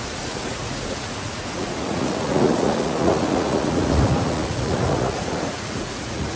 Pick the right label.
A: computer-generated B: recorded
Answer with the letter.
A